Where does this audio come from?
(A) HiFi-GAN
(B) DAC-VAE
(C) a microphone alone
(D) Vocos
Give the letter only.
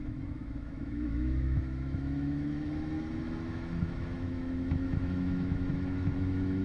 B